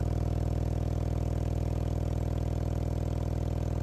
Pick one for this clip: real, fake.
real